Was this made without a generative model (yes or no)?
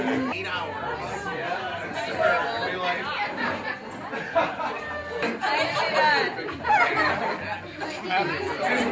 yes